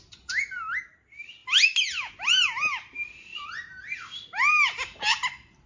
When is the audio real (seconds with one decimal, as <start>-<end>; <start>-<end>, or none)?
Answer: 0.0-5.7